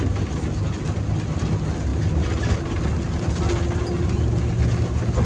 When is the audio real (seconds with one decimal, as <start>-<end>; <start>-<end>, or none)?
0.0-5.2